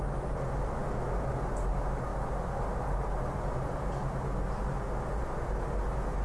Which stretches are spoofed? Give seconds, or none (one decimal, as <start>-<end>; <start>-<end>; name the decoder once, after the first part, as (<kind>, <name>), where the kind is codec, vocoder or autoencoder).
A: 0.8-1.3 (autoencoder, DAC-VAE)